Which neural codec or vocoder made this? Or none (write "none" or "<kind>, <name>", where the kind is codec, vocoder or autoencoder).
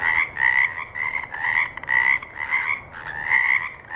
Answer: none